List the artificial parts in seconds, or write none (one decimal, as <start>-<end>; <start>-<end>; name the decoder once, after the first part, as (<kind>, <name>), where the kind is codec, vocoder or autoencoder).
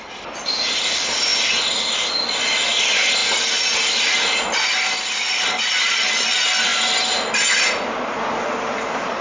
0.0-1.3 (vocoder, BigVGAN v2); 2.8-3.2; 4.9-6.7